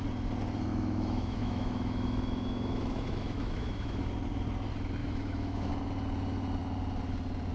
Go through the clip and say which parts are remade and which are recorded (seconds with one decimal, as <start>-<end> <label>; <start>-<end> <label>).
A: 0.0-0.7 recorded; 0.7-4.1 remade; 4.1-5.0 recorded; 5.0-5.7 remade; 5.7-7.5 recorded

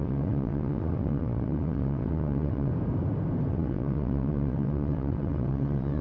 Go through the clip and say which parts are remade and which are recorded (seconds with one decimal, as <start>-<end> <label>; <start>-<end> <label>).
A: 0.0-2.7 remade; 2.7-3.5 recorded; 3.5-6.0 remade

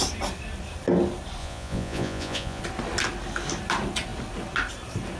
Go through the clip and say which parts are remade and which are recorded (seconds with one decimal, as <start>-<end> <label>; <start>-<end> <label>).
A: 0.0-1.4 recorded; 1.4-2.6 remade; 2.6-5.2 recorded

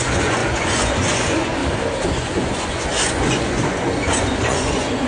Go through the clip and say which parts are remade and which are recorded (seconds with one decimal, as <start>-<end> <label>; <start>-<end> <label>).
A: 0.0-1.6 remade; 1.6-2.1 recorded; 2.1-5.1 remade

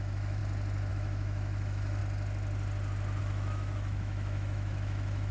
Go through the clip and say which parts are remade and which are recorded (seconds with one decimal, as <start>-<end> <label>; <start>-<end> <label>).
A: 0.0-0.4 remade; 0.4-0.9 recorded; 0.9-2.0 remade; 2.0-3.2 recorded; 3.2-5.3 remade

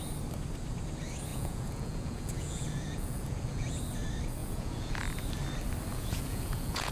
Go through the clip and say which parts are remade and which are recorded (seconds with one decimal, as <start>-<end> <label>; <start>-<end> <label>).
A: 0.0-1.3 recorded; 1.3-3.7 remade; 3.7-4.4 recorded; 4.4-5.0 remade; 5.0-5.9 recorded; 5.9-6.9 remade

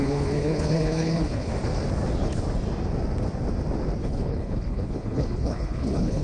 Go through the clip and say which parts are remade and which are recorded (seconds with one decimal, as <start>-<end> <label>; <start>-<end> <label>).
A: 0.0-1.5 remade; 1.5-4.0 recorded; 4.0-6.2 remade

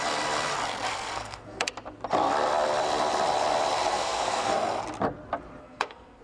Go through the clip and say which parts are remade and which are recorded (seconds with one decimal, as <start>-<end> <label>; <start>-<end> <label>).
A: 0.0-0.9 recorded; 0.9-1.7 remade; 1.7-3.9 recorded; 3.9-4.8 remade; 4.8-5.6 recorded; 5.6-6.2 remade